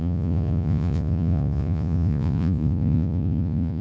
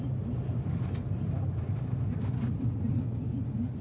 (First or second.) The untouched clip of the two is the second